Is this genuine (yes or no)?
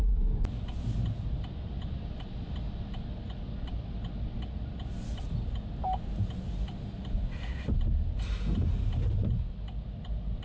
yes